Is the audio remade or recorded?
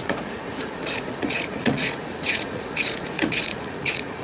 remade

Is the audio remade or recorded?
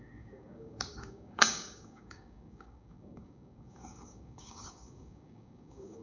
remade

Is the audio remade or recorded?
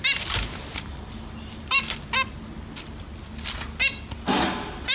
recorded